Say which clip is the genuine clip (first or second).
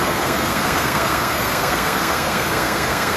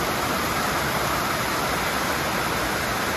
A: second